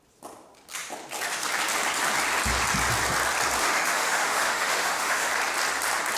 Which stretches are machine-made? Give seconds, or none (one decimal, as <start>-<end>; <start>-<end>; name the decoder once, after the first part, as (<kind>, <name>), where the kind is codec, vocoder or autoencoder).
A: 3.6-5.3 (autoencoder, DAC-VAE)